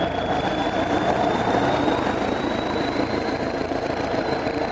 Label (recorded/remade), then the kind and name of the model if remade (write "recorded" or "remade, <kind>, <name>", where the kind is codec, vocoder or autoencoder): remade, vocoder, BigVGAN v2